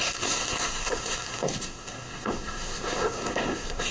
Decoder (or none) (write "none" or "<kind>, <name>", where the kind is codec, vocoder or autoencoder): codec, SNAC